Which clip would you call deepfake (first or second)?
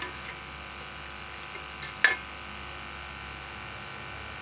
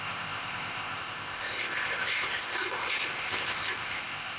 second